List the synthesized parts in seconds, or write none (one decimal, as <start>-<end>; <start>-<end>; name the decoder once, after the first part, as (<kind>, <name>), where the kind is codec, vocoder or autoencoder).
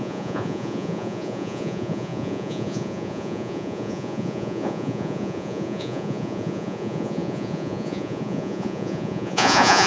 0.0-9.9 (vocoder, Vocos)